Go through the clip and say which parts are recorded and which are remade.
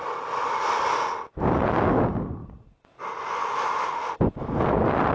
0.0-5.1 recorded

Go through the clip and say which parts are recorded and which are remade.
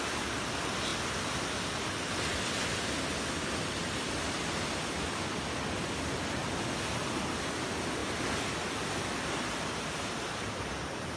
0.0-11.2 recorded